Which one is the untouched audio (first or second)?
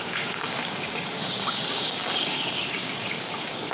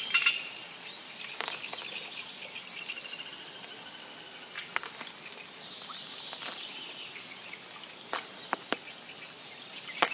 second